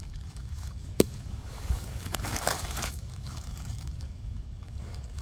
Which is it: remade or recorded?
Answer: remade